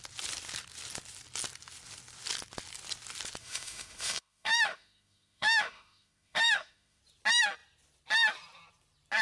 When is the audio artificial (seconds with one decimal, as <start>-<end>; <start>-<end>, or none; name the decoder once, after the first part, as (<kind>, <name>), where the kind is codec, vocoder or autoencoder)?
3.4-7.0 (autoencoder, DAC-VAE)